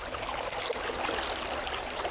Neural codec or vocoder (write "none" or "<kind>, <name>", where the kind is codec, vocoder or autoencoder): none